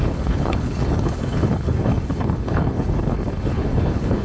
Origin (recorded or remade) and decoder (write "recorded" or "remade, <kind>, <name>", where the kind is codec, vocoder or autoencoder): remade, codec, HILCodec